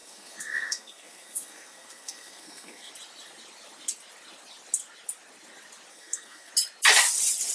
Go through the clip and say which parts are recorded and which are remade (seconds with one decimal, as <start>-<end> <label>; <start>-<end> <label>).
0.0-2.9 remade; 2.9-5.9 recorded; 5.9-6.5 remade; 6.5-7.5 recorded